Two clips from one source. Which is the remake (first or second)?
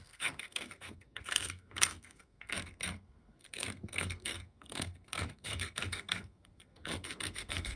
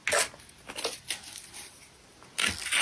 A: first